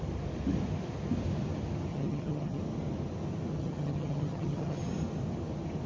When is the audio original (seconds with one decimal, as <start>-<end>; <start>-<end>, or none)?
0.0-1.9; 2.6-3.6; 4.9-5.9